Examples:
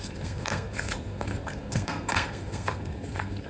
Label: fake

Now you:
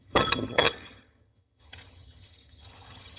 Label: fake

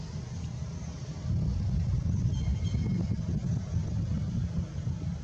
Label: real